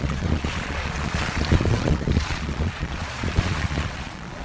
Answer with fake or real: fake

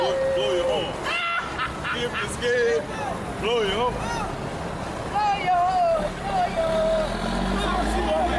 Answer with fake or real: real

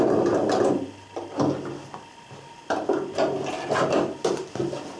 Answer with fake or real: real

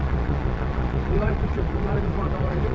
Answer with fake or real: fake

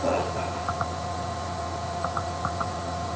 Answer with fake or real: fake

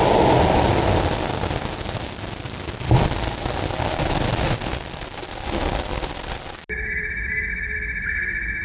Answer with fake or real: real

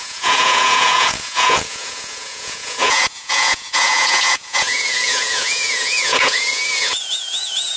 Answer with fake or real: fake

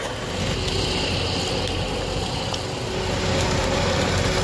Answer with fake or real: real